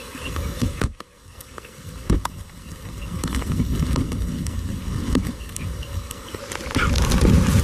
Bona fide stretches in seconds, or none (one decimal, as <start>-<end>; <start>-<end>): 6.4-7.6